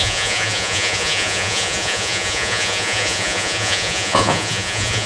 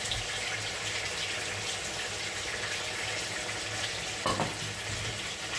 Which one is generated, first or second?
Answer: first